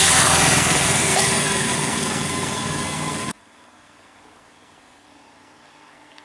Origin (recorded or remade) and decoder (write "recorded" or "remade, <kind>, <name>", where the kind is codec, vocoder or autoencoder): remade, codec, SNAC